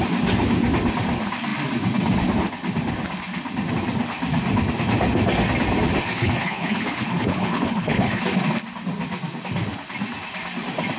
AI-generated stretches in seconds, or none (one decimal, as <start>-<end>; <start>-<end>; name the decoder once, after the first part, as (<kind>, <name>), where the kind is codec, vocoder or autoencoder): 6.0-8.2 (codec, HILCodec)